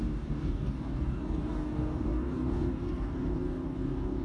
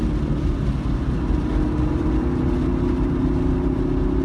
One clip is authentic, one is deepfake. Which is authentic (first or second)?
second